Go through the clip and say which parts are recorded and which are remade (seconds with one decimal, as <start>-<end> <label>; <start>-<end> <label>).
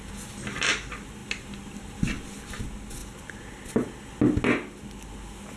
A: 0.0-5.6 recorded